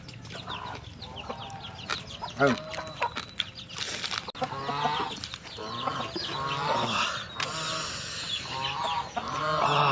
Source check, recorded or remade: recorded